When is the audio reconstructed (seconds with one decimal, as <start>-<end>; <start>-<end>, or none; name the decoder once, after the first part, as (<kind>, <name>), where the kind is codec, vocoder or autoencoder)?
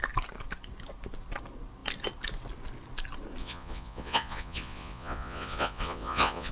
3.4-6.5 (vocoder, Vocos)